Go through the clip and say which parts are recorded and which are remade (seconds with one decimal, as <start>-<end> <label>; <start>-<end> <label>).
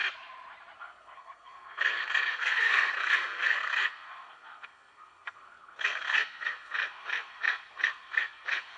0.0-0.8 recorded; 0.8-8.8 remade